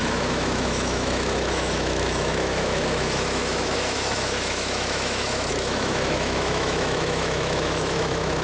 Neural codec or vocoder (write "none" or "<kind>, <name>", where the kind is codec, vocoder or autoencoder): autoencoder, DAC-VAE